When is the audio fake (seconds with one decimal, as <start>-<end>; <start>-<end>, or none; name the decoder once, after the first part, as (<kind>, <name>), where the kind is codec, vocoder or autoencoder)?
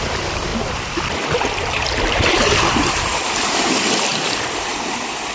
0.0-3.1 (vocoder, BigVGAN v2); 4.7-5.3